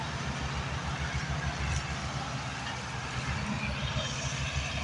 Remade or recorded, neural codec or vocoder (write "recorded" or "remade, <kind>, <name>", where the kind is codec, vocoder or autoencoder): recorded